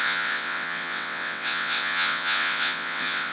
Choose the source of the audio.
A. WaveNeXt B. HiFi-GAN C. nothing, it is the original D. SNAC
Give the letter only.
A